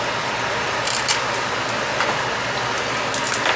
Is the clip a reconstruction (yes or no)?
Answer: no